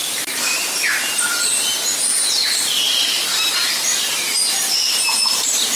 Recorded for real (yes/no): no